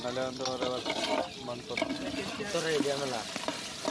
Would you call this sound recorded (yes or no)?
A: yes